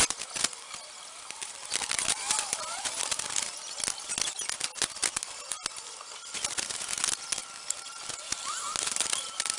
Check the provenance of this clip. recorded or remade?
recorded